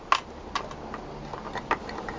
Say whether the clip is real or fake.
real